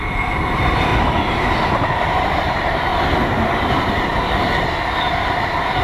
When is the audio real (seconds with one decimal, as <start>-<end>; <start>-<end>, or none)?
0.9-1.7; 2.9-3.9